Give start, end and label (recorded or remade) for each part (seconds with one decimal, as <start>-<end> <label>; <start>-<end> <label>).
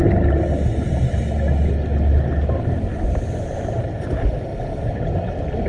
0.0-5.7 recorded